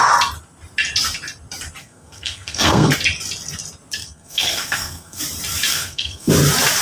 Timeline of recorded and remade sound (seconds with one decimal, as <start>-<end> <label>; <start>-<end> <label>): 0.0-1.8 recorded; 1.8-2.9 remade; 2.9-4.0 recorded; 4.0-5.2 remade; 5.2-5.7 recorded; 5.7-6.3 remade; 6.3-6.8 recorded